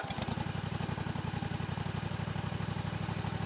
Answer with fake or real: real